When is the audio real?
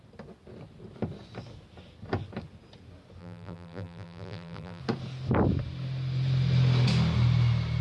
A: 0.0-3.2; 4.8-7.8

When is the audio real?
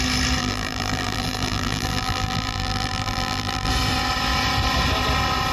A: 0.0-0.4; 3.7-5.5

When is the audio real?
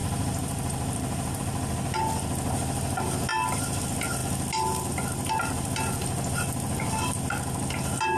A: 1.4-8.2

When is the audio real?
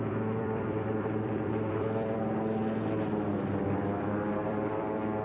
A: 2.6-4.0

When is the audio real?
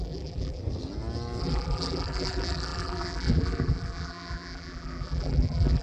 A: 0.6-1.4